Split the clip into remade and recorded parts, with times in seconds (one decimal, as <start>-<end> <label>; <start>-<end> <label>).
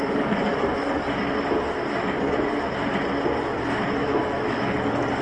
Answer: 0.0-4.0 recorded; 4.0-4.6 remade; 4.6-5.2 recorded